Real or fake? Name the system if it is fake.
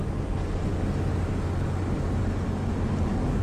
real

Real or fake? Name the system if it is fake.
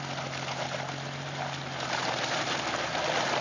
real